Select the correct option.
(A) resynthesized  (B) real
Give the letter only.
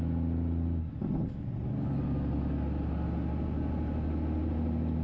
B